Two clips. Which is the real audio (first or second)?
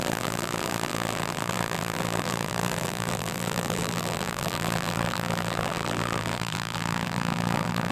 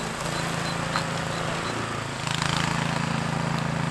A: second